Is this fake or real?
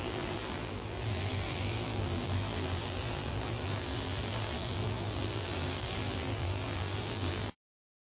fake